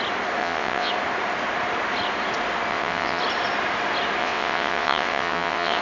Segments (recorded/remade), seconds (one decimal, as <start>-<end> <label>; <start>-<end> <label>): 0.0-0.4 recorded; 0.4-0.9 remade; 0.9-2.7 recorded; 2.7-3.2 remade; 3.2-4.2 recorded; 4.2-5.8 remade